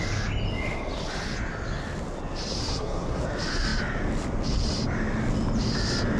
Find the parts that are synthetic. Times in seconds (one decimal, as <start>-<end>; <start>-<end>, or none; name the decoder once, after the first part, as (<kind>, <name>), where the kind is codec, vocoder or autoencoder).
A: 2.6-3.2 (codec, SNAC)